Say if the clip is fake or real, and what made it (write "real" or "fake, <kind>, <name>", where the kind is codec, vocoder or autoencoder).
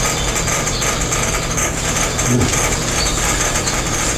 real